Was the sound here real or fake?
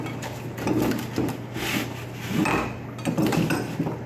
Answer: real